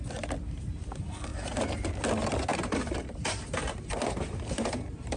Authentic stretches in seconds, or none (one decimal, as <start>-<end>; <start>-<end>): 0.0-1.3; 1.9-2.5